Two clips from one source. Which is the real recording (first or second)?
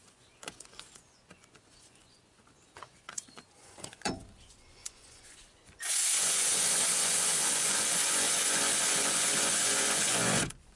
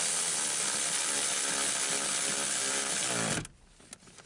second